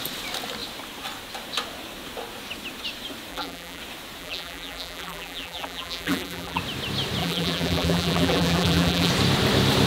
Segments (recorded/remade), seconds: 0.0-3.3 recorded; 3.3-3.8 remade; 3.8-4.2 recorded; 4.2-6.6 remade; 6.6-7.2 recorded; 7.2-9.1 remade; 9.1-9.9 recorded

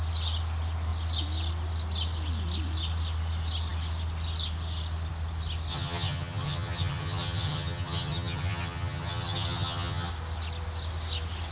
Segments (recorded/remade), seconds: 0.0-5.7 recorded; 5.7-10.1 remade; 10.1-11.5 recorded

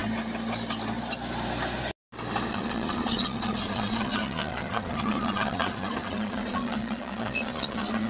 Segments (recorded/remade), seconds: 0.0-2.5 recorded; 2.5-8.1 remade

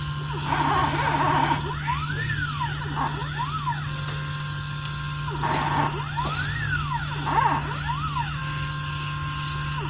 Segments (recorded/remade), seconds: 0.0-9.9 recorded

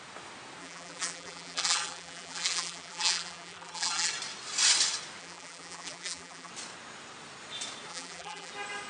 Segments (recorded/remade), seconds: 0.0-0.6 recorded; 0.6-4.1 remade; 4.1-5.2 recorded; 5.2-6.5 remade; 6.5-7.9 recorded; 7.9-8.5 remade; 8.5-8.9 recorded